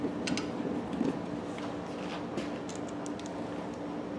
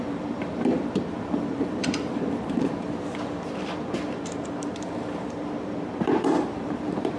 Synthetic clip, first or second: second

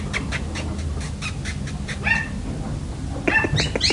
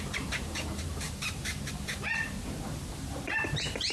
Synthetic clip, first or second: second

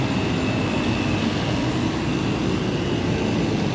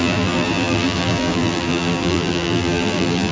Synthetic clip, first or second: second